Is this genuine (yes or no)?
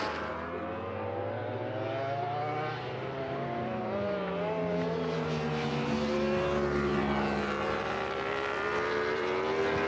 yes